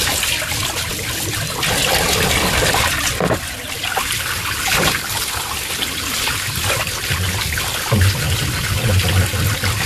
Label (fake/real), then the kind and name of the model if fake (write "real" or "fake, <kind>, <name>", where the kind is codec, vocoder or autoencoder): real